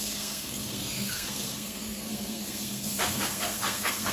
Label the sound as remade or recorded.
remade